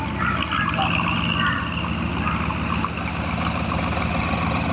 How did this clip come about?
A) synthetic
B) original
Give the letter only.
B